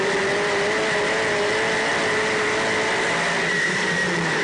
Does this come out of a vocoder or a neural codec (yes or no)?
no